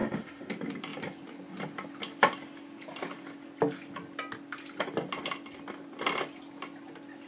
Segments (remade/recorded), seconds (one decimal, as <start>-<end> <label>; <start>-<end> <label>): 0.0-0.5 remade; 0.5-7.3 recorded